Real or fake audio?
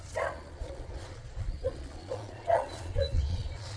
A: fake